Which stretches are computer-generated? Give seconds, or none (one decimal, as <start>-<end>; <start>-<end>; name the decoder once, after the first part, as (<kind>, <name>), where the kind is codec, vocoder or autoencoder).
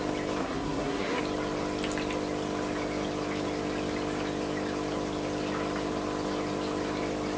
0.4-1.2 (codec, SNAC)